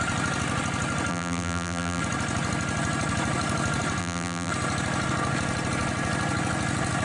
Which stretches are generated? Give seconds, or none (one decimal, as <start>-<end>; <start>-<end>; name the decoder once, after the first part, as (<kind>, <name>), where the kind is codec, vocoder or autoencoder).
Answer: 1.1-2.0 (vocoder, BigVGAN v2); 4.0-4.5